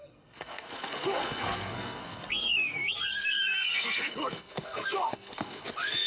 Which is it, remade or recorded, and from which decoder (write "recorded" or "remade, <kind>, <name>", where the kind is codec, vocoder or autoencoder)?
remade, codec, SNAC